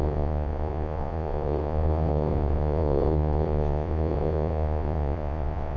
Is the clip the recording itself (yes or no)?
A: no